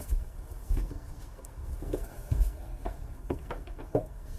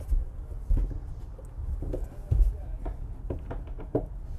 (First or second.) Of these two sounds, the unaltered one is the second